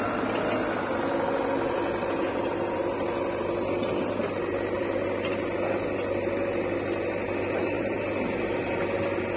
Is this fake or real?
real